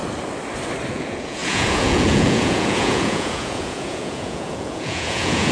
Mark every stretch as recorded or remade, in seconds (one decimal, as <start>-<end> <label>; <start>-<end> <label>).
0.0-0.9 recorded; 0.9-5.5 remade